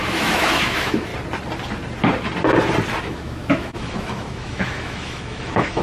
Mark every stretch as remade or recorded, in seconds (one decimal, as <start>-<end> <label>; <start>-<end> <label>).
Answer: 0.0-1.1 remade; 1.1-3.0 recorded; 3.0-5.8 remade